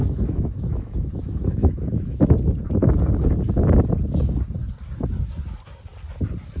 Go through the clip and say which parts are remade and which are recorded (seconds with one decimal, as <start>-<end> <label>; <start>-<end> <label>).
0.0-2.2 remade; 2.2-6.6 recorded